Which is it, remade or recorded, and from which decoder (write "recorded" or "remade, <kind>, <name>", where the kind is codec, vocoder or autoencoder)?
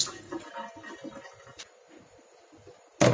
recorded